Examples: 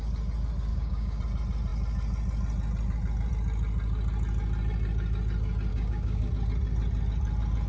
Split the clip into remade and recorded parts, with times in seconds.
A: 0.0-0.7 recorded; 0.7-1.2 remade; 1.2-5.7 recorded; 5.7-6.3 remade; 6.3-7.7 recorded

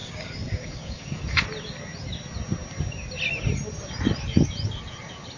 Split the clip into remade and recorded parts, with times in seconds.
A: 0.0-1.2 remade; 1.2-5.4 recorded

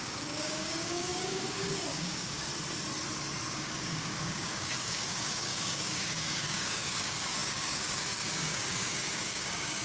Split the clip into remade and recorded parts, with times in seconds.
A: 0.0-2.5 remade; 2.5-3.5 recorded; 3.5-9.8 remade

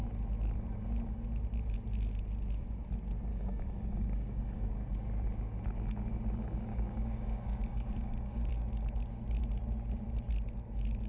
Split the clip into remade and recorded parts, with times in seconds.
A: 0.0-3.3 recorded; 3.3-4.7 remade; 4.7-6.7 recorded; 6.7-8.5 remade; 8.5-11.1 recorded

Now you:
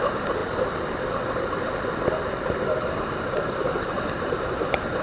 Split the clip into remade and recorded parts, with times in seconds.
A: 0.0-5.0 recorded

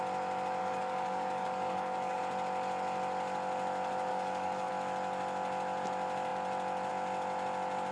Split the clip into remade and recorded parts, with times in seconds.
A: 0.0-0.6 recorded; 0.6-2.2 remade; 2.2-4.1 recorded; 4.1-4.7 remade; 4.7-7.9 recorded